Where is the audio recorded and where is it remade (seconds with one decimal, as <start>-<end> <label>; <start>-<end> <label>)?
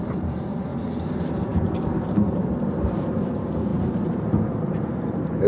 0.0-0.7 remade; 0.7-1.4 recorded; 1.4-5.5 remade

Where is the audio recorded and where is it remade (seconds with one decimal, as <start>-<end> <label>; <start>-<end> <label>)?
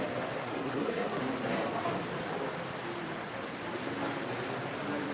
0.0-0.4 recorded; 0.4-1.2 remade; 1.2-5.1 recorded